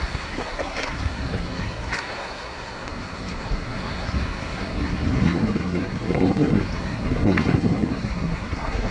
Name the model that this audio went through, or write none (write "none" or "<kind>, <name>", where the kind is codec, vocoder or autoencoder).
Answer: codec, SNAC